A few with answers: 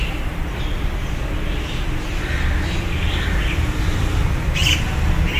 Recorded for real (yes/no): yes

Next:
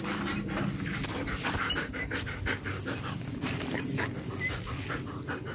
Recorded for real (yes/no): yes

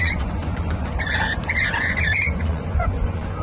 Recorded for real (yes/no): no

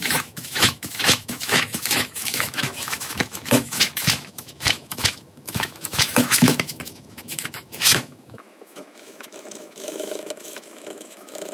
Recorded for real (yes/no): no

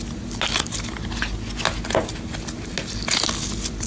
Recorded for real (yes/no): yes